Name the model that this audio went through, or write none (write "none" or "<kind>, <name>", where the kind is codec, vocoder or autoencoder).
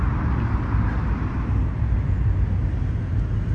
none